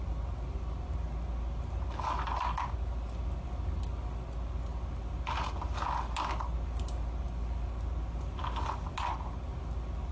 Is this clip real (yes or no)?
yes